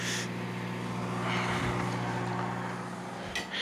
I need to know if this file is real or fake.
real